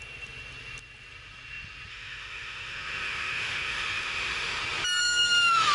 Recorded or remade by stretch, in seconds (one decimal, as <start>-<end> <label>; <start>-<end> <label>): 0.0-1.9 recorded; 1.9-4.6 remade; 4.6-5.0 recorded; 5.0-5.7 remade